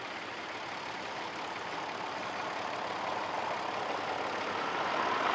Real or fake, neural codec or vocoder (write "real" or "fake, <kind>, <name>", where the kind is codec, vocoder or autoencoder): real